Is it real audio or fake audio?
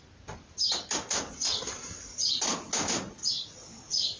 real